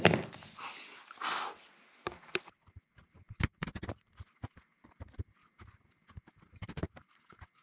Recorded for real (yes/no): yes